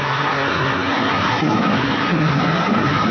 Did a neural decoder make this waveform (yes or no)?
yes